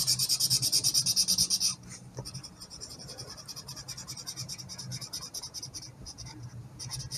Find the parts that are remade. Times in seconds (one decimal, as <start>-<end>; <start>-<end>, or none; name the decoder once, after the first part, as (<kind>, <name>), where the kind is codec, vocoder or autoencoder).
none